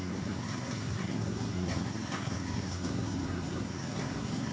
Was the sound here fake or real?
fake